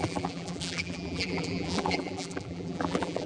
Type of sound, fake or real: fake